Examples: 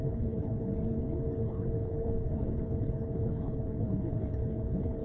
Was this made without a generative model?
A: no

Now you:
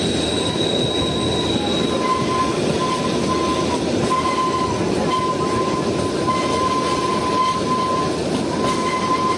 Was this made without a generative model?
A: yes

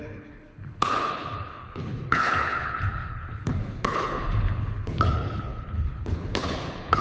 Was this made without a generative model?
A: no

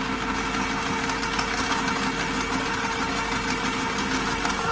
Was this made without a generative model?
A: yes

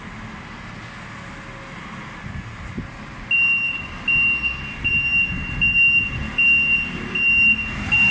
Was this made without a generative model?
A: yes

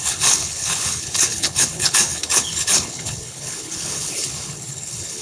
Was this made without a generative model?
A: no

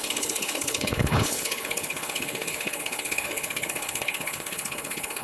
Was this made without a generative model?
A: no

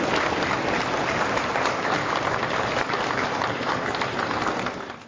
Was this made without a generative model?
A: yes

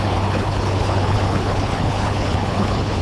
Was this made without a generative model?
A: no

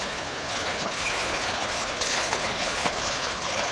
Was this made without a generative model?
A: no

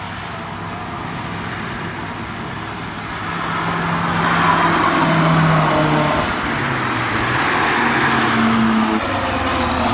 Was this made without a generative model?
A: yes